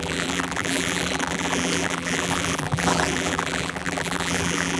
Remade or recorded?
remade